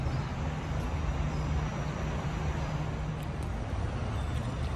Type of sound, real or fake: real